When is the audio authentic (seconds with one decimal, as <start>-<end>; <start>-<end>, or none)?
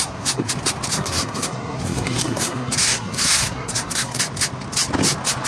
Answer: 0.5-0.9; 4.2-5.5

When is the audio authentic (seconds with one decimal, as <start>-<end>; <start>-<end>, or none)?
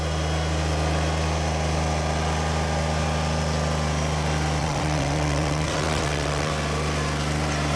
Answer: 0.0-4.6; 6.5-7.8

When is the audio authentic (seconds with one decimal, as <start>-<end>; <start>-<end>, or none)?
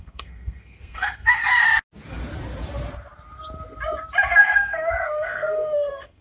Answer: 1.4-4.3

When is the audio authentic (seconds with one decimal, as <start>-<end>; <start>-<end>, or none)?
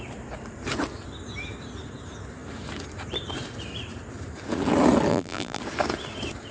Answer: 0.0-5.1; 5.6-6.5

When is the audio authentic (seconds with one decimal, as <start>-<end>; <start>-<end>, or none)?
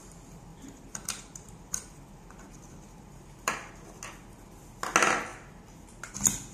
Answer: 0.0-0.5; 3.7-5.3; 6.1-6.5